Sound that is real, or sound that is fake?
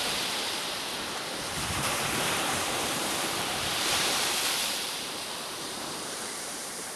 fake